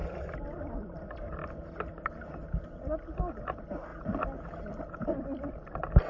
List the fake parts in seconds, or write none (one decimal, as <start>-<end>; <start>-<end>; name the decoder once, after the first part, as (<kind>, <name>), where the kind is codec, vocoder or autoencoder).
none